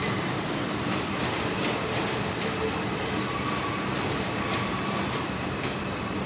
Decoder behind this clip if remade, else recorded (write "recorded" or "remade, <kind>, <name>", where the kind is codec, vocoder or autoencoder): remade, vocoder, BigVGAN v2